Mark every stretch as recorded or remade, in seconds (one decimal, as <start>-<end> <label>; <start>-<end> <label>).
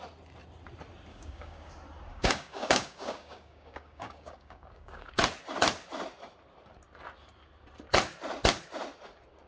0.0-1.1 recorded; 1.1-1.7 remade; 1.7-2.1 recorded; 2.1-5.2 remade; 5.2-9.5 recorded